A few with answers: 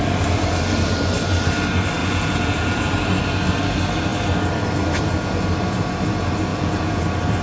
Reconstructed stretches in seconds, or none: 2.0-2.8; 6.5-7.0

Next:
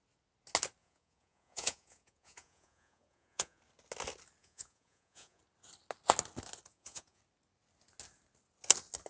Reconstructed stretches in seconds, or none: 0.8-3.6; 4.4-5.4; 6.7-7.2

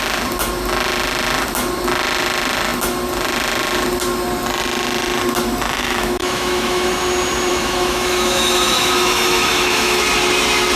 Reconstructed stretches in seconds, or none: 5.8-6.9; 7.5-10.0

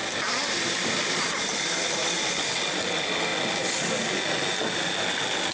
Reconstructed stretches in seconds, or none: none

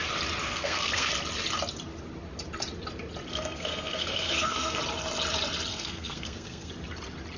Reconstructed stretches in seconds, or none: 0.4-1.1; 3.3-4.8; 5.7-6.7

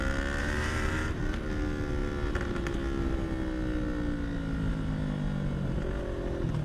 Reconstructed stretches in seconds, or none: 0.4-1.2